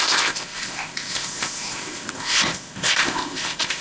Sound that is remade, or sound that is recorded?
remade